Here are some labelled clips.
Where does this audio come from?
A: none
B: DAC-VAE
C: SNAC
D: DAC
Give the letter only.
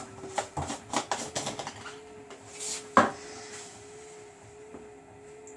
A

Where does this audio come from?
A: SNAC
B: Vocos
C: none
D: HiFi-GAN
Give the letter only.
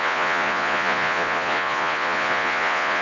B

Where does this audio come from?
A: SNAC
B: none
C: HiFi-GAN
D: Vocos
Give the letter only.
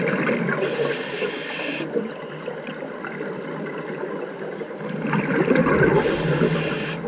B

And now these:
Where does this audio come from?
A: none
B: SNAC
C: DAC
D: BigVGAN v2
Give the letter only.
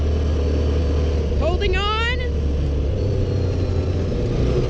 A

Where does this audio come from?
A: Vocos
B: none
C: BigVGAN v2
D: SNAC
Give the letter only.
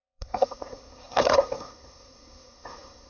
D